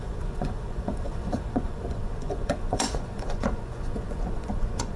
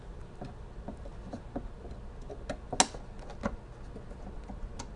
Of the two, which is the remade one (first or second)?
first